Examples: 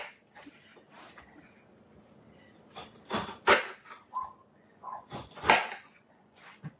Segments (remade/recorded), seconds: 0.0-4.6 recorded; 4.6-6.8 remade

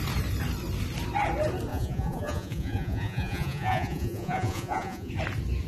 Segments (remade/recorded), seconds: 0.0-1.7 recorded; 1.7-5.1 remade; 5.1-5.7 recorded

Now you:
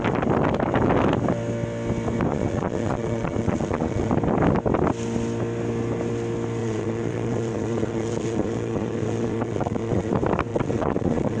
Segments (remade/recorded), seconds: 0.0-2.3 recorded; 2.3-4.1 remade; 4.1-6.6 recorded; 6.6-10.1 remade; 10.1-10.5 recorded; 10.5-11.4 remade

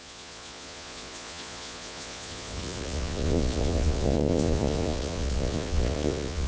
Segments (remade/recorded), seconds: 0.0-6.5 remade

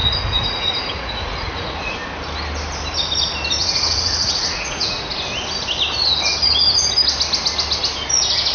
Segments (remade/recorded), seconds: 0.0-1.9 remade; 1.9-3.6 recorded; 3.6-5.1 remade; 5.1-8.5 recorded

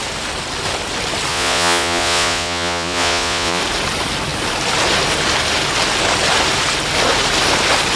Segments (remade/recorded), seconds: 0.0-1.3 recorded; 1.3-3.6 remade; 3.6-8.0 recorded

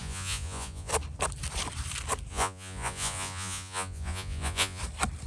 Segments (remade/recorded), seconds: 0.0-0.9 remade; 0.9-2.3 recorded; 2.3-4.8 remade; 4.8-5.3 recorded

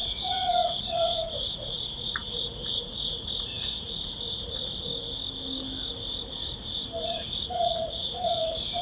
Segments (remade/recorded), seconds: 0.0-4.9 remade; 4.9-7.0 recorded; 7.0-8.8 remade